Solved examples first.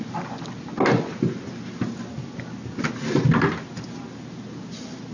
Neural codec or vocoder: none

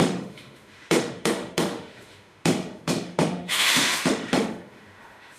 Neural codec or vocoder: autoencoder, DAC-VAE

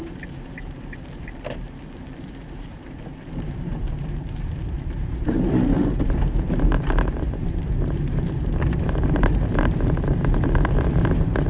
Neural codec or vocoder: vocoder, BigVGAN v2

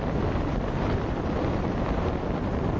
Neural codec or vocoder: none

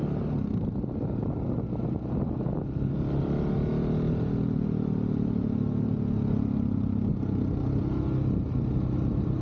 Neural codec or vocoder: none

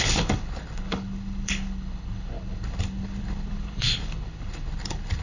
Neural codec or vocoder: codec, HILCodec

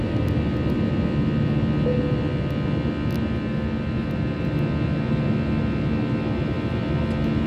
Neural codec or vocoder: none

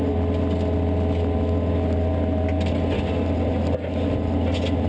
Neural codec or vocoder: none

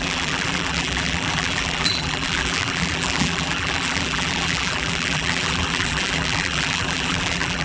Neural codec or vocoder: vocoder, BigVGAN v2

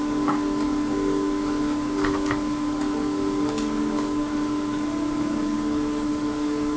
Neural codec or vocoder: codec, DAC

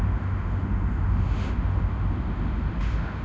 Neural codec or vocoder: autoencoder, DAC-VAE